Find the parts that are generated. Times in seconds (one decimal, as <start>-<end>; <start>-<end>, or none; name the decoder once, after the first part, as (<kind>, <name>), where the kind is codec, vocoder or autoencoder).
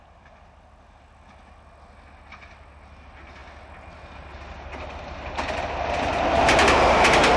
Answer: none